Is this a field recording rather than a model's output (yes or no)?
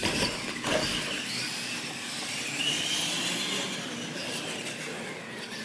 yes